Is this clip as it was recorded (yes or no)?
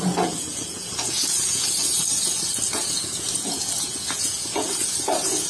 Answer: no